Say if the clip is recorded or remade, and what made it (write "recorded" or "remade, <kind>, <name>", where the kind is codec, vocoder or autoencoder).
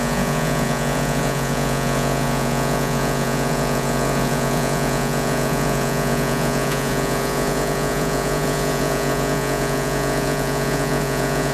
remade, vocoder, Vocos